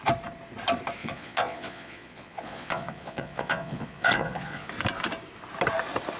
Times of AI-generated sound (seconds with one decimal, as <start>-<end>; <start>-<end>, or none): 1.0-4.7